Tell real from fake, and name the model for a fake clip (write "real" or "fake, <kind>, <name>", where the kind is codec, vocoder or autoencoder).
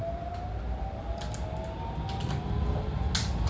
real